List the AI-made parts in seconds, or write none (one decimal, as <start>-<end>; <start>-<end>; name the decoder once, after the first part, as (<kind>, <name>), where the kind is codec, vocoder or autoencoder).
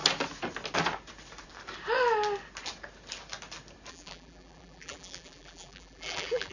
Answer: 3.9-6.5 (vocoder, BigVGAN v2)